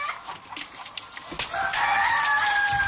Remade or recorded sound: recorded